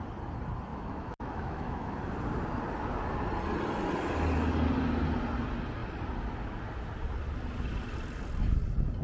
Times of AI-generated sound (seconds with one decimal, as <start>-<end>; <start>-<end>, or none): 0.7-2.0